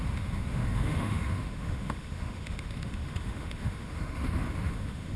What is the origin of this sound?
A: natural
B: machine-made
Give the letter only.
B